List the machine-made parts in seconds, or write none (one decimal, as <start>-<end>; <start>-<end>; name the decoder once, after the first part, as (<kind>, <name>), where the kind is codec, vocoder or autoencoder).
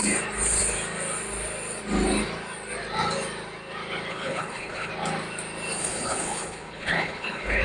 4.1-4.9 (codec, HILCodec); 5.8-7.6